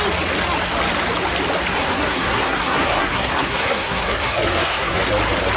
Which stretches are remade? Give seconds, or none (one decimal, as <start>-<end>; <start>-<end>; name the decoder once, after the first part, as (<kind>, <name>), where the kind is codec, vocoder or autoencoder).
1.7-5.0 (codec, SNAC)